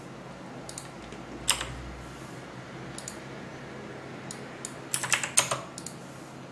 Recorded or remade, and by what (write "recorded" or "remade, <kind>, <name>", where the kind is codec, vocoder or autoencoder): recorded